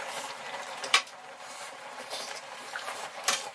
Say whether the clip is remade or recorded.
remade